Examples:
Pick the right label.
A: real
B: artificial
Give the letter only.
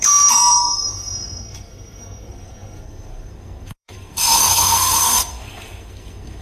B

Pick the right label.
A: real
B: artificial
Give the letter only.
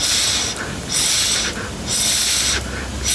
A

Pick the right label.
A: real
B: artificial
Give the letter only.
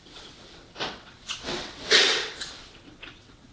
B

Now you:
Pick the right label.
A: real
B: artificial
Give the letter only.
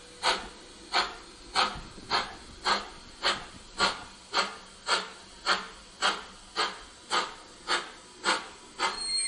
A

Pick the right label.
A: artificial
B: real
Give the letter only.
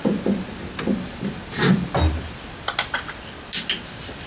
B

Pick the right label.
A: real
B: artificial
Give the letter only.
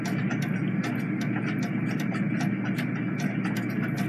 A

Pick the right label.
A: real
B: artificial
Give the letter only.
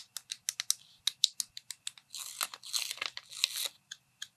A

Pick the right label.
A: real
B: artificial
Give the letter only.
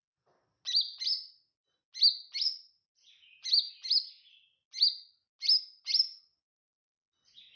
A